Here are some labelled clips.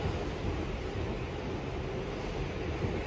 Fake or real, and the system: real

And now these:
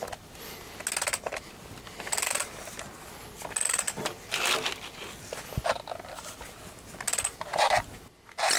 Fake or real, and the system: real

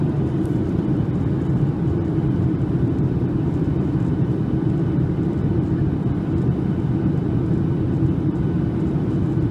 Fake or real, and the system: real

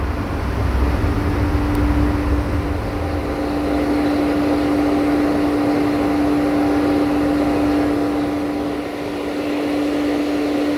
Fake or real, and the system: real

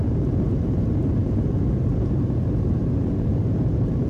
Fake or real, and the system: fake, vocoder, BigVGAN v2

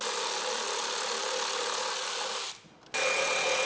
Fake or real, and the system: real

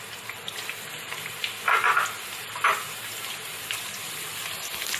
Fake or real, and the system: real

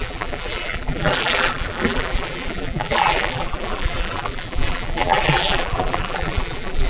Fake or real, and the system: fake, vocoder, BigVGAN v2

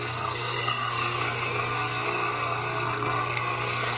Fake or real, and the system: fake, codec, SNAC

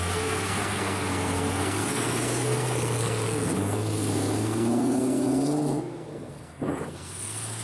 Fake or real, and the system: fake, codec, SNAC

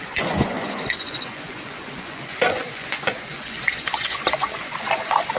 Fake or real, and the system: fake, vocoder, Vocos